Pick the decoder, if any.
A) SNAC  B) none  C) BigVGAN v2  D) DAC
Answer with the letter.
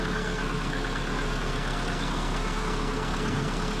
A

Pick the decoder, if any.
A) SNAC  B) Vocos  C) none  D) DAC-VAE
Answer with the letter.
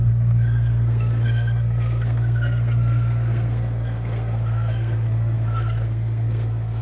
A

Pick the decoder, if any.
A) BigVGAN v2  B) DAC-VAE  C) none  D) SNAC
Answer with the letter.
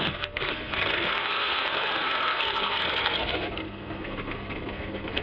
D